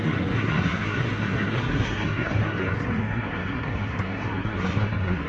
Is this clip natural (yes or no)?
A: no